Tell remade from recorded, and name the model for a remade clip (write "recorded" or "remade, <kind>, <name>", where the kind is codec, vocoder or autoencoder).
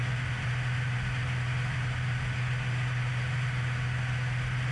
recorded